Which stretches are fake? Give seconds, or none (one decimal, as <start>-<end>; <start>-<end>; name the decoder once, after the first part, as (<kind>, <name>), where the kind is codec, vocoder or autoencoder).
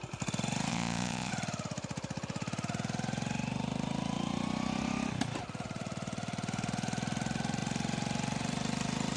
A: 0.7-1.3 (vocoder, Vocos)